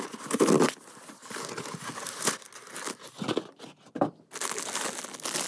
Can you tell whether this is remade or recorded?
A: recorded